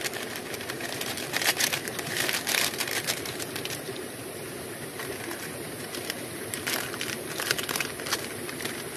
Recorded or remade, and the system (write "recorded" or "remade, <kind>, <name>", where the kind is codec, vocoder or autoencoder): remade, vocoder, BigVGAN v2